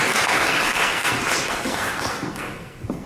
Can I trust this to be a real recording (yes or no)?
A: no